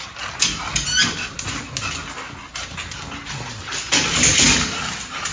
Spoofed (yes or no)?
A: no